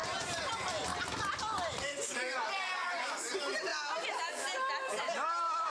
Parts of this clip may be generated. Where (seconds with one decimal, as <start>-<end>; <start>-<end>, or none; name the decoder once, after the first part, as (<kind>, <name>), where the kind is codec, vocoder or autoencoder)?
0.0-0.9 (vocoder, BigVGAN v2); 2.6-3.7; 5.0-5.7